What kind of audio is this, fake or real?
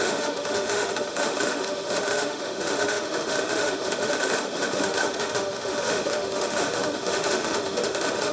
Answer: fake